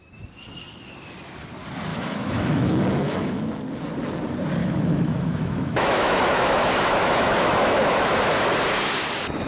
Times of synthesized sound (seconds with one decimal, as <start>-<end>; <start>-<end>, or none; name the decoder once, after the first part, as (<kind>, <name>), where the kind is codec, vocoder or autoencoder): 1.9-3.5 (autoencoder, DAC-VAE); 4.6-8.1